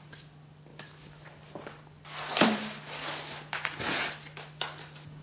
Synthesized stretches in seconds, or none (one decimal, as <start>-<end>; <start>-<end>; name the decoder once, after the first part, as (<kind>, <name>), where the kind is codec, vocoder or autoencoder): none